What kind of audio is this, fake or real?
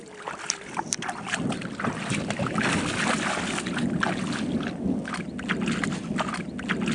real